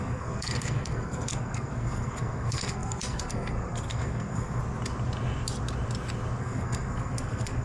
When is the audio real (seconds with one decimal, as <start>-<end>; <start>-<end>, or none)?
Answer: 4.6-6.4